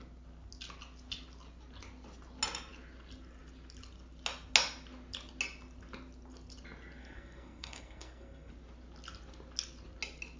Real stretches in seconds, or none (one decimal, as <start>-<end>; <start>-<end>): 0.0-7.0; 8.5-10.4